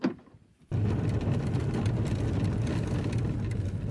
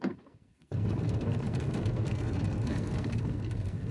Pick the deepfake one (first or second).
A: second